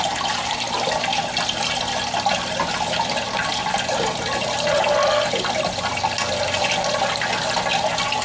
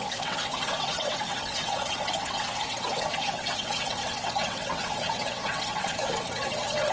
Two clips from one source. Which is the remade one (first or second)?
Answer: second